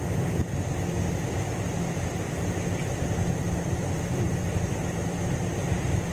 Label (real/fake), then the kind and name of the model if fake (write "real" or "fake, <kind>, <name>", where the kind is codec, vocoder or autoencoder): real